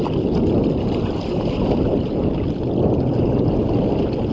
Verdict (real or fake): real